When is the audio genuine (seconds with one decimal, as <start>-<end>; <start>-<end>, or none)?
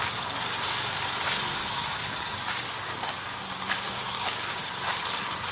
0.0-1.6; 4.6-5.5